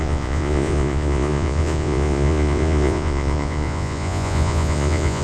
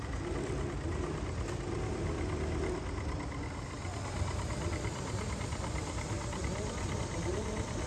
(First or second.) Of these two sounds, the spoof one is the first